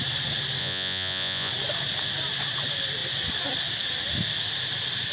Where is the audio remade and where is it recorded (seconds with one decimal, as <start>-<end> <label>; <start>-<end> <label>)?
0.0-0.6 recorded; 0.6-1.5 remade; 1.5-5.1 recorded